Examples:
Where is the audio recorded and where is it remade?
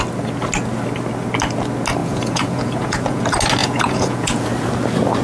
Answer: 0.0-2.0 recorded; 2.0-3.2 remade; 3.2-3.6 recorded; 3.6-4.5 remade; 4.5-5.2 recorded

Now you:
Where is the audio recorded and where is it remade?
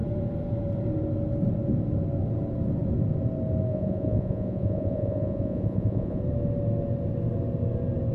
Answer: 0.0-3.7 recorded; 3.7-6.2 remade; 6.2-8.1 recorded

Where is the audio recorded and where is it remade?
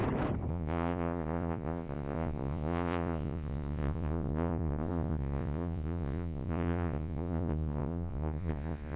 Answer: 0.0-0.5 recorded; 0.5-9.0 remade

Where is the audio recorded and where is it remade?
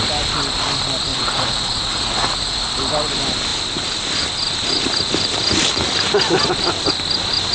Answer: 0.0-1.1 recorded; 1.1-2.7 remade; 2.7-7.5 recorded